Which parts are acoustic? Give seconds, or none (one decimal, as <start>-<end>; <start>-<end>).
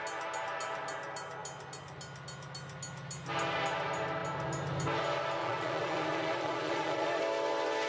0.0-5.4; 7.2-7.9